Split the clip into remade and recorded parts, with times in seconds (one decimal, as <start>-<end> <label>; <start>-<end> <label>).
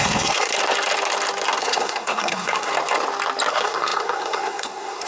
0.0-0.5 remade; 0.5-1.6 recorded; 1.6-2.7 remade; 2.7-3.5 recorded; 3.5-5.1 remade